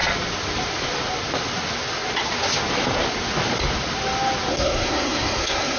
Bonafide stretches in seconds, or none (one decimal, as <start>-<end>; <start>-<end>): 0.0-4.5